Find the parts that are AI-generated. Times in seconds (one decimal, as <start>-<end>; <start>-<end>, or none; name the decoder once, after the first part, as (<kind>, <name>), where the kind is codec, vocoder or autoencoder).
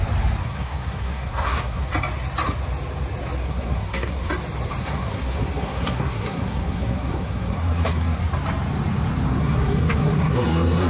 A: 0.4-1.9 (codec, SNAC); 3.4-4.3; 4.8-8.2; 9.4-10.9